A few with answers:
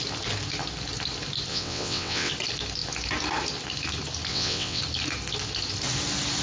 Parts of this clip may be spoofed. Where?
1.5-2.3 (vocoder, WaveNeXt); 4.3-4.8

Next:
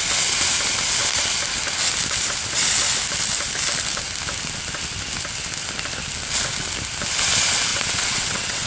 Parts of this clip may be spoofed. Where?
7.7-8.7 (vocoder, WaveNeXt)

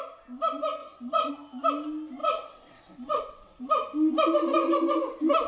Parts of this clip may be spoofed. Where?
0.8-1.3 (vocoder, WaveNeXt); 2.2-3.6

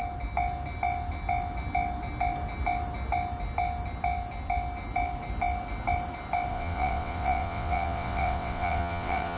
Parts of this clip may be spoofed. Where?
6.5-9.4 (vocoder, WaveNeXt)

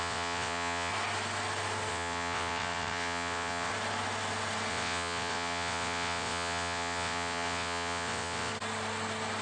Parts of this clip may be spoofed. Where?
0.0-0.9 (vocoder, WaveNeXt); 1.9-3.7; 4.7-8.5